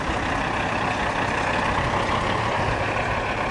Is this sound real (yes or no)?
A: yes